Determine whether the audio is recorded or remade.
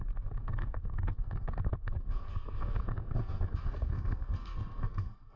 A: remade